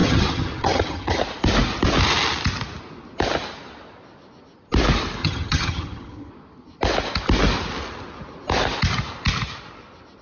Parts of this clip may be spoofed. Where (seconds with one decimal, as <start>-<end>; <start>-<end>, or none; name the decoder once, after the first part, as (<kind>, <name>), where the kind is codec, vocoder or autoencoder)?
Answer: 0.0-1.2 (vocoder, HiFi-GAN); 5.2-6.3